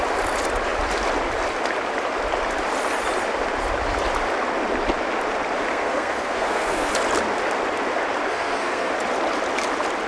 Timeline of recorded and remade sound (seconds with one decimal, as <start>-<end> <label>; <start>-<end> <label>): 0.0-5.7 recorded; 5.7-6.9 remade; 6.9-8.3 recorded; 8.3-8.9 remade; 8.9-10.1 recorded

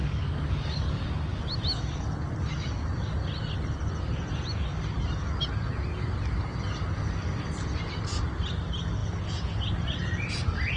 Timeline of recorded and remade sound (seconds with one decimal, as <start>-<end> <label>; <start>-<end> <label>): 0.0-1.4 remade; 1.4-10.8 recorded

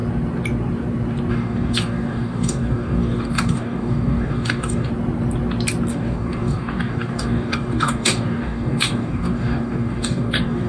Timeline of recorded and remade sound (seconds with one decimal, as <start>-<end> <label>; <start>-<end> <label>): 0.0-1.3 recorded; 1.3-4.9 remade; 4.9-5.9 recorded; 5.9-10.7 remade

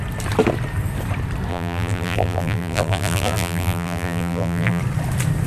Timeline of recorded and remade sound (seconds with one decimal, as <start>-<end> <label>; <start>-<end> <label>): 0.0-1.5 recorded; 1.5-4.8 remade; 4.8-5.5 recorded

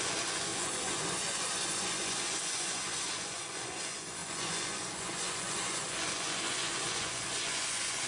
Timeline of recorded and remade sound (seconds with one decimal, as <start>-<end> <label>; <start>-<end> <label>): 0.0-8.1 remade

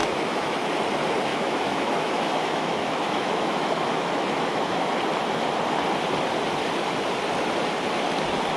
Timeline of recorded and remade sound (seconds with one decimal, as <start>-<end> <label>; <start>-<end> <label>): 0.0-0.7 remade; 0.7-1.3 recorded; 1.3-4.9 remade; 4.9-8.6 recorded